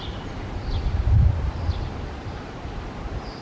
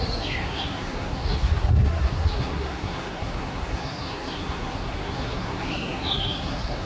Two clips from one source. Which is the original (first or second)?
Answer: first